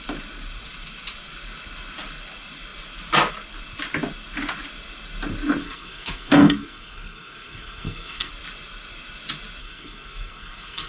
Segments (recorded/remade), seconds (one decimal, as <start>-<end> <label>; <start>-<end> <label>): 0.0-5.6 recorded; 5.6-8.3 remade; 8.3-9.6 recorded; 9.6-10.9 remade